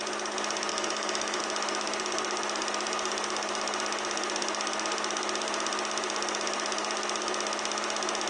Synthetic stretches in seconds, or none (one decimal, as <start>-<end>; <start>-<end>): 0.7-1.4